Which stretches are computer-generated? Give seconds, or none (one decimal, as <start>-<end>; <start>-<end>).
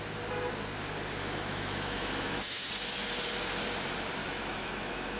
1.2-2.7; 4.2-5.2